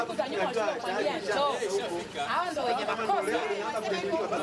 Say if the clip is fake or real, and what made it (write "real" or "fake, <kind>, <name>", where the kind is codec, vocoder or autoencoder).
real